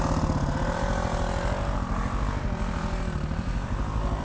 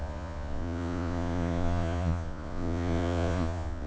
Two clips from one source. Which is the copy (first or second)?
second